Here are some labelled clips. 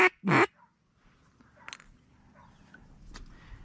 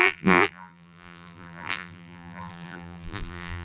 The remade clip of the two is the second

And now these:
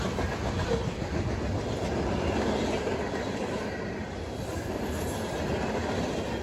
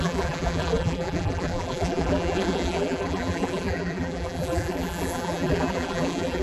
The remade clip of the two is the second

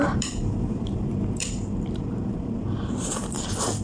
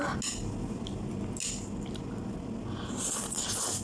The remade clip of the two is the first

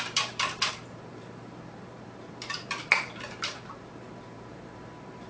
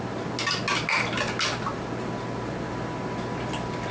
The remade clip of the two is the first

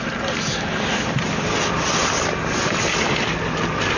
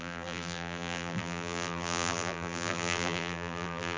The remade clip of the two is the second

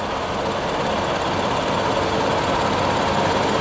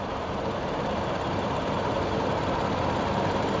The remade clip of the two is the second